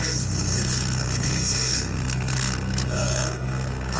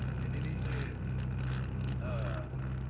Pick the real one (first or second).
second